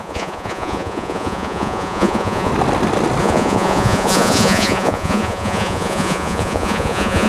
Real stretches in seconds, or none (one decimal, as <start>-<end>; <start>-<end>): 2.5-3.2